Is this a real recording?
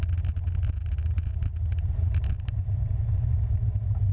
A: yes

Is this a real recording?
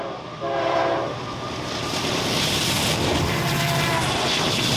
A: no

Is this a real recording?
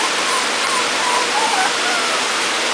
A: yes